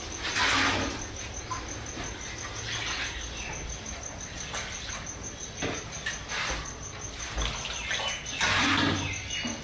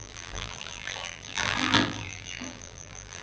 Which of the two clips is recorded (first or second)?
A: first